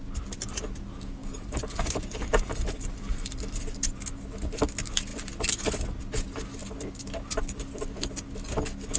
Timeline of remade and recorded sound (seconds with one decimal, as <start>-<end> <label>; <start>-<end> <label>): 0.0-1.2 recorded; 1.2-3.6 remade; 3.6-9.0 recorded